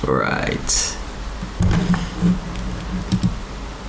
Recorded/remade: recorded